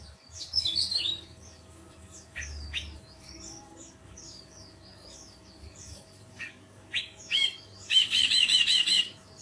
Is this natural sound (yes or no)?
no